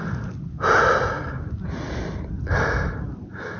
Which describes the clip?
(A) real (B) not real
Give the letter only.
A